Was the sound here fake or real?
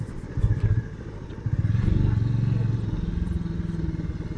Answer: real